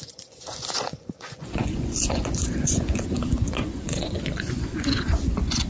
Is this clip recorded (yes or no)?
no